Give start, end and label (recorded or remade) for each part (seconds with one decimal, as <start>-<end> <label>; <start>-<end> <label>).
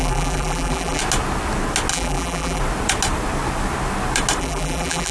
0.0-1.0 remade; 1.0-1.9 recorded; 1.9-2.6 remade; 2.6-4.4 recorded; 4.4-5.1 remade